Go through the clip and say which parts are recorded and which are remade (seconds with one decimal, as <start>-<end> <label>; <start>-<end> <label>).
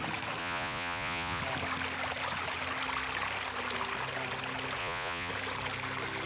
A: 0.0-0.4 recorded; 0.4-1.4 remade; 1.4-4.8 recorded; 4.8-5.3 remade; 5.3-6.3 recorded